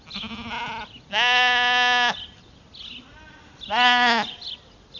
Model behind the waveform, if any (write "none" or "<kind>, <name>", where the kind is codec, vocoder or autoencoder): none